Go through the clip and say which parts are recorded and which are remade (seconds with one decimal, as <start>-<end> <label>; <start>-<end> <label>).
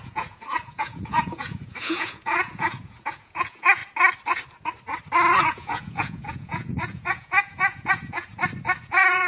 0.0-3.8 remade; 3.8-5.4 recorded; 5.4-8.3 remade; 8.3-8.8 recorded; 8.8-9.3 remade